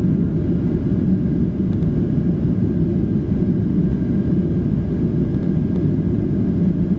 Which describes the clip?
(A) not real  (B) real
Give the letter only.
B